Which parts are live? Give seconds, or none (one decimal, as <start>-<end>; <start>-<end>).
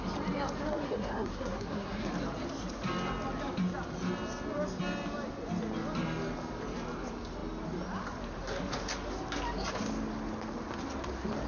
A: 0.0-0.7; 2.1-11.5